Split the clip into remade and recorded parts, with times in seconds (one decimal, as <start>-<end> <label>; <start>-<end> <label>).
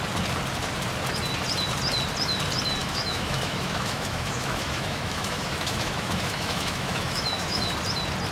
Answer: 0.0-2.8 recorded; 2.8-7.7 remade; 7.7-8.3 recorded